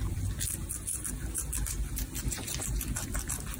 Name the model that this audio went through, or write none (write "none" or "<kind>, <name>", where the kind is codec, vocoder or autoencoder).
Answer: vocoder, BigVGAN v2